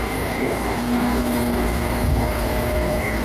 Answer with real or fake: fake